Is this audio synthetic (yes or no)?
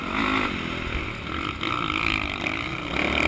no